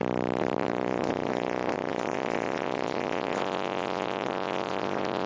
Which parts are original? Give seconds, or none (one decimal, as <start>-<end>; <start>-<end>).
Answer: 0.0-0.7